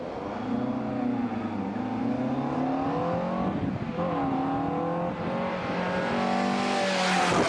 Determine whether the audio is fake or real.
real